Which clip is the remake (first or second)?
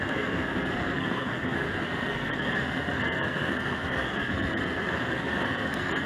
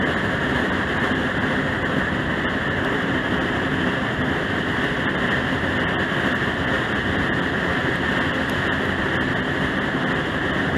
first